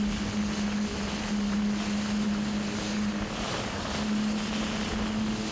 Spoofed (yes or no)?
no